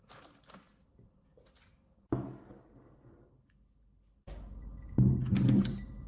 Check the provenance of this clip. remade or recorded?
recorded